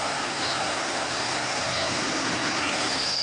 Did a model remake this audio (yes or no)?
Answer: yes